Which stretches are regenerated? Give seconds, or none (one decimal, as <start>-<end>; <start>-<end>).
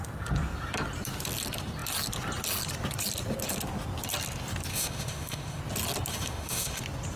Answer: 4.7-5.6; 6.1-6.8